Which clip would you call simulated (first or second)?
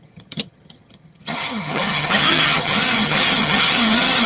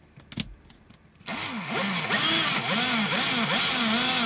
first